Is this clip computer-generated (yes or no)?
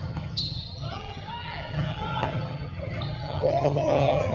yes